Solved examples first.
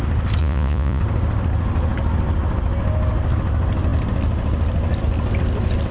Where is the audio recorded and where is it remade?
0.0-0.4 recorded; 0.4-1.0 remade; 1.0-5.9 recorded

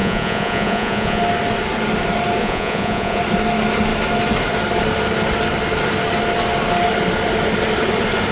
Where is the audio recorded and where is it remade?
0.0-1.2 remade; 1.2-2.4 recorded; 2.4-3.2 remade; 3.2-8.3 recorded

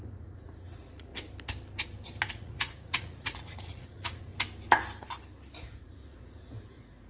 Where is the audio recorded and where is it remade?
0.0-1.1 remade; 1.1-2.3 recorded; 2.3-4.3 remade; 4.3-5.6 recorded; 5.6-7.1 remade

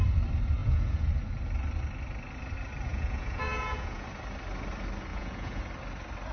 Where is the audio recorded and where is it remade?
0.0-0.6 recorded; 0.6-1.1 remade; 1.1-2.9 recorded; 2.9-4.1 remade; 4.1-5.1 recorded; 5.1-5.6 remade; 5.6-6.3 recorded

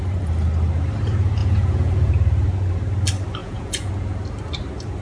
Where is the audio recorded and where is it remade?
0.0-1.4 recorded; 1.4-2.1 remade; 2.1-3.4 recorded; 3.4-3.9 remade; 3.9-5.0 recorded